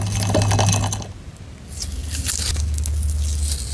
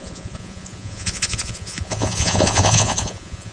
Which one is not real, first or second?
second